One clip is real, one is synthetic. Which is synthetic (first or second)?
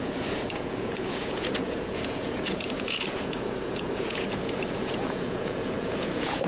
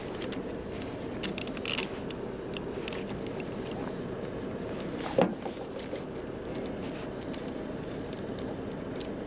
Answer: first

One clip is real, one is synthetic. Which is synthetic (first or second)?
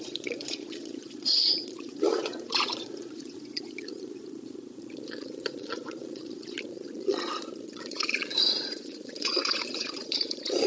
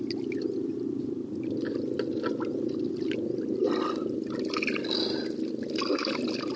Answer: first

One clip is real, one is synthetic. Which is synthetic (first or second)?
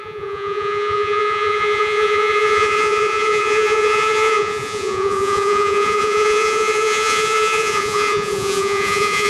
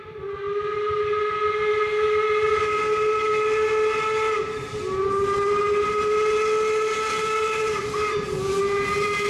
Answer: first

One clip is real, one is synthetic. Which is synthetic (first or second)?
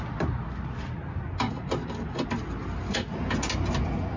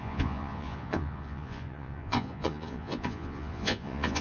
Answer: second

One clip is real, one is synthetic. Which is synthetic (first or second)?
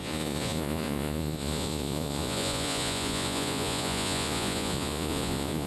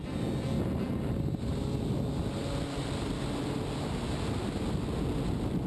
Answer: first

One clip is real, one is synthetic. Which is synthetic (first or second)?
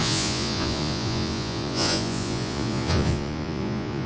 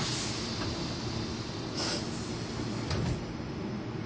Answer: first